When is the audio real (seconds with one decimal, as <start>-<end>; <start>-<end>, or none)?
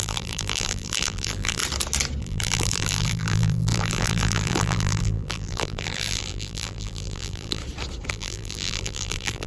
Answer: 1.6-2.2; 7.6-8.1